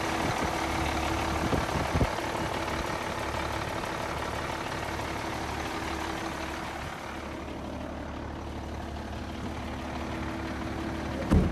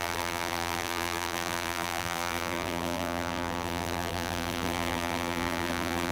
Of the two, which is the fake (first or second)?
second